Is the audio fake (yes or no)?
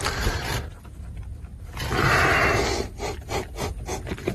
no